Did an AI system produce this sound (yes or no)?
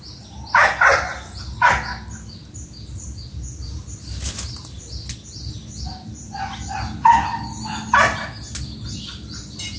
no